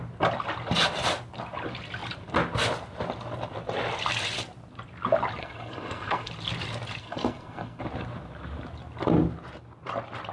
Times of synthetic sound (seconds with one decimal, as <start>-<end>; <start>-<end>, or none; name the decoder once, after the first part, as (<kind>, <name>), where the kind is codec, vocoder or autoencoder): 5.4-6.3 (codec, SNAC); 7.0-7.8

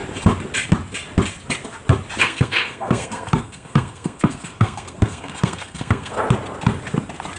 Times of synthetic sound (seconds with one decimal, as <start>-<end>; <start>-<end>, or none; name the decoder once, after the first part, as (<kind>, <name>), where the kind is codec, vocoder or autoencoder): 2.2-6.2 (codec, SNAC)

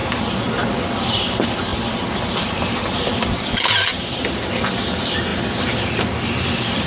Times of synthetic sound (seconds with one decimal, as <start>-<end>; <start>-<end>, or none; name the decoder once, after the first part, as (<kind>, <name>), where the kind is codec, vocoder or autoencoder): none